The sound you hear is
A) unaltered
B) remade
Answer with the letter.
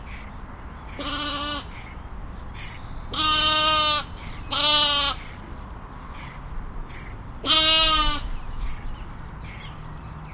A